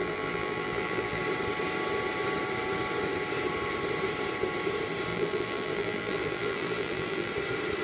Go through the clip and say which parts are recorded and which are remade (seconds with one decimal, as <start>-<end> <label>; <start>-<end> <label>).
0.0-1.2 remade; 1.2-5.1 recorded; 5.1-7.3 remade; 7.3-7.8 recorded